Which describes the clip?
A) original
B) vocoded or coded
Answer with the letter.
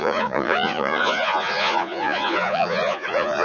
B